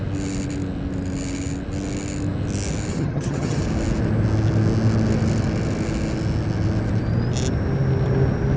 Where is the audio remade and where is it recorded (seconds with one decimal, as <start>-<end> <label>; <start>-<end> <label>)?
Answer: 0.0-2.9 recorded; 2.9-3.6 remade; 3.6-8.6 recorded